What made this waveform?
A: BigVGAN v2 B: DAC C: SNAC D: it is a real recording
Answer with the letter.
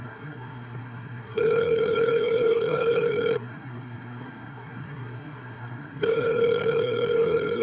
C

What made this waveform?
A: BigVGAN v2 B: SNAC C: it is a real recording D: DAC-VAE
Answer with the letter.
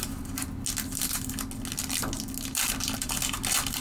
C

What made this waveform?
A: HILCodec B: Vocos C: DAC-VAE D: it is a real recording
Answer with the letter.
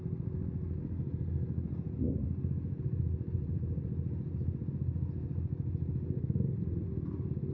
D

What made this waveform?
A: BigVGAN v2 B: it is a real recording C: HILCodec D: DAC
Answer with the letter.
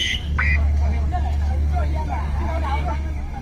D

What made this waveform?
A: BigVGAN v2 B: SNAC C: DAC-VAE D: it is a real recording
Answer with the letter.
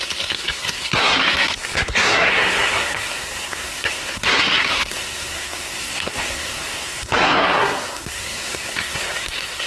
B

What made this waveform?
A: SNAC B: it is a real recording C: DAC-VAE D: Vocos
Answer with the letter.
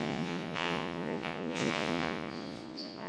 D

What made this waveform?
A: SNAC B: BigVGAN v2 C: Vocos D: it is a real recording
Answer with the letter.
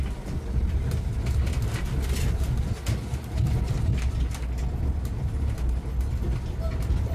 D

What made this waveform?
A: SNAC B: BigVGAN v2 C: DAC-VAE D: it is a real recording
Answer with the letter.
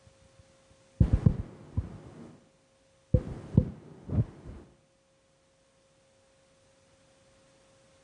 D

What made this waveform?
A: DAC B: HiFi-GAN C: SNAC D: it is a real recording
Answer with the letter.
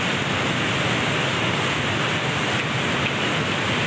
D